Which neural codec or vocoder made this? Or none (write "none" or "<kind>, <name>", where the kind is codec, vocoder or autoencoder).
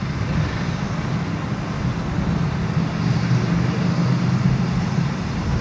none